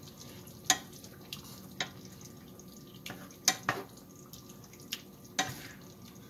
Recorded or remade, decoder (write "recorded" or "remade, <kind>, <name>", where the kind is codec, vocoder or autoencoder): recorded